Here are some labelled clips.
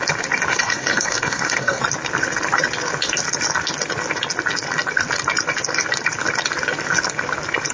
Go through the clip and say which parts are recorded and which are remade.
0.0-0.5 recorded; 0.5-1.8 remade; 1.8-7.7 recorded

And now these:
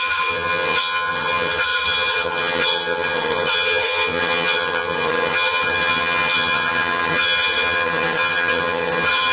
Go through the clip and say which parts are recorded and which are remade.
0.0-9.3 remade